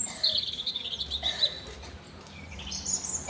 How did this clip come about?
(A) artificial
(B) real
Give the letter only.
B